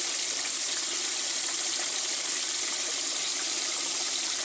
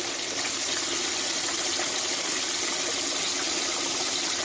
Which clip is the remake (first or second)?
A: first